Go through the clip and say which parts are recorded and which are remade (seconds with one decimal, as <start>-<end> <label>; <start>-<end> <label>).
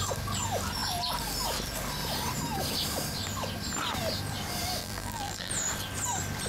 0.0-4.8 recorded; 4.8-5.5 remade; 5.5-6.5 recorded